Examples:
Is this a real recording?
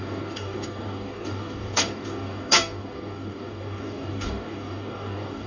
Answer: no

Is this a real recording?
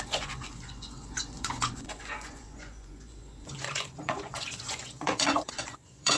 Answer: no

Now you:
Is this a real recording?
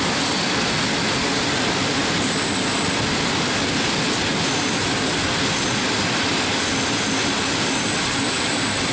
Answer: yes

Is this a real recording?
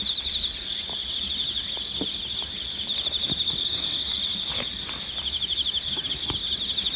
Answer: yes